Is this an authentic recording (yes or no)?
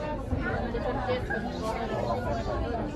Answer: yes